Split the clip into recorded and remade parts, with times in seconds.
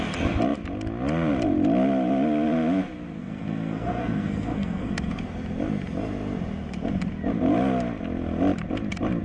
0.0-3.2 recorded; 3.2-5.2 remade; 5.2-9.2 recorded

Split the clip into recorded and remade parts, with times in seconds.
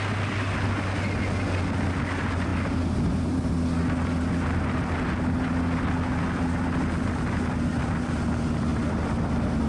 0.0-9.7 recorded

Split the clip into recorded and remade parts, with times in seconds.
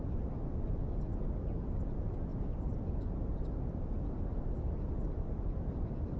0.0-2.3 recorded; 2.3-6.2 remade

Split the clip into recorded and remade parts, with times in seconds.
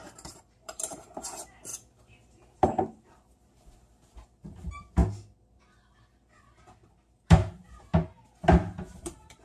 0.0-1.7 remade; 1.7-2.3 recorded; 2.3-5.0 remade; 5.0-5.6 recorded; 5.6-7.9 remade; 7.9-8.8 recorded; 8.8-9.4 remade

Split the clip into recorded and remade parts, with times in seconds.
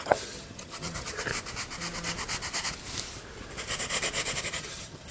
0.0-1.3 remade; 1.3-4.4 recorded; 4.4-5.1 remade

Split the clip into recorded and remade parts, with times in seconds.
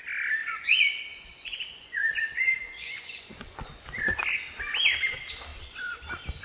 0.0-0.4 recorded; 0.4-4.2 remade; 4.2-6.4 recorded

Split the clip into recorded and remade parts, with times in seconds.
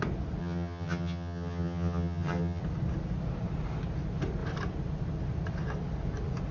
0.0-0.4 recorded; 0.4-2.6 remade; 2.6-6.5 recorded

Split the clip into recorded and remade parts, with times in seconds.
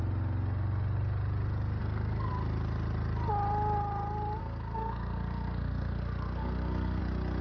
0.0-1.8 recorded; 1.8-2.3 remade; 2.3-4.4 recorded; 4.4-7.0 remade; 7.0-7.4 recorded